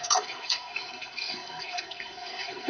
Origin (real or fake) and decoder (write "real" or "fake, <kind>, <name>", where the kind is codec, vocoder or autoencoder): fake, codec, SNAC